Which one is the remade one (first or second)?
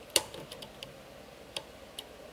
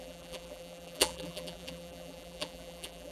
second